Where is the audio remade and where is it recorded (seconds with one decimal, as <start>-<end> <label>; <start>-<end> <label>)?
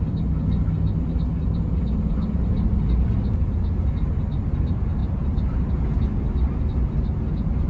0.0-7.7 recorded